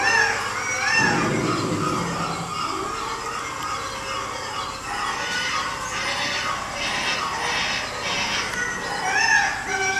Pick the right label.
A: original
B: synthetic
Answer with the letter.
A